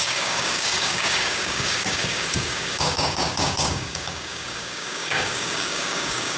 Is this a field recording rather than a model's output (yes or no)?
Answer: no